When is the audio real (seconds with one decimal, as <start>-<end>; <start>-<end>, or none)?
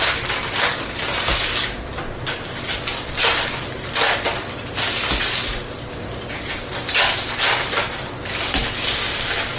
0.0-9.6